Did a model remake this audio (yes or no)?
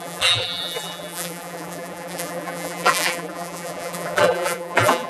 yes